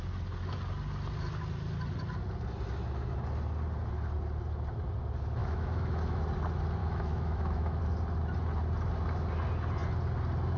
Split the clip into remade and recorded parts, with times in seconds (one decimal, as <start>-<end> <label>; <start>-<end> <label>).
0.0-5.4 recorded; 5.4-6.2 remade; 6.2-6.8 recorded; 6.8-7.8 remade; 7.8-10.6 recorded